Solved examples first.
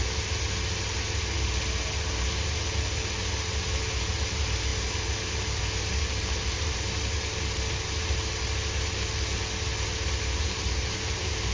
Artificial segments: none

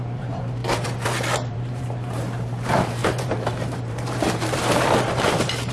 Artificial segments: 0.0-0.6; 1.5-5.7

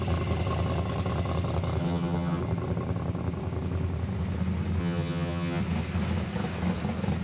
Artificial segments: 1.8-2.4; 4.8-5.6

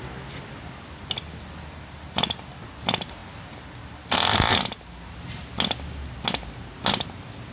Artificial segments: none

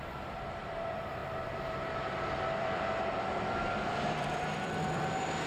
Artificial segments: 0.0-5.5

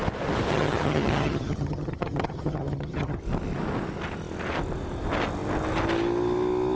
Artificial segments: 0.5-3.2